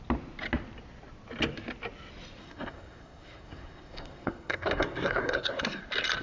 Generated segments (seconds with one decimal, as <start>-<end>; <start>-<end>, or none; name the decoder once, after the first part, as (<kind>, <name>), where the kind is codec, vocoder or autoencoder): 2.4-5.8 (codec, SNAC)